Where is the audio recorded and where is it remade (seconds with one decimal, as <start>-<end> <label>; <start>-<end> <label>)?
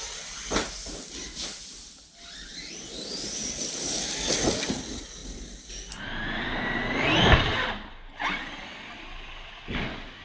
0.0-2.5 recorded; 2.5-3.6 remade; 3.6-5.2 recorded; 5.2-5.9 remade; 5.9-10.2 recorded